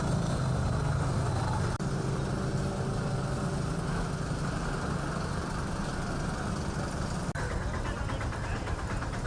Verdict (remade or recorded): recorded